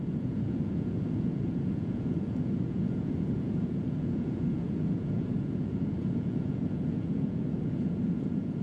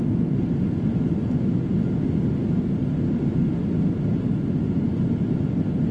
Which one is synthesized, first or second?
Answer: first